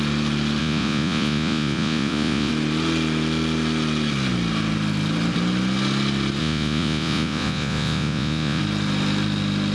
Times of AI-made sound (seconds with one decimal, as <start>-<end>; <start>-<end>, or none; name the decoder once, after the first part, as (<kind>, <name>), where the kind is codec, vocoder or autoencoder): 0.6-2.5 (vocoder, Vocos); 6.4-8.6